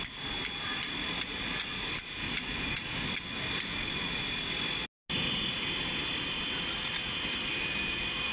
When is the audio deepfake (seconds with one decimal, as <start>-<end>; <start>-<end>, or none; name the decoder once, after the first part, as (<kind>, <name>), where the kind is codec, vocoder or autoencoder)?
none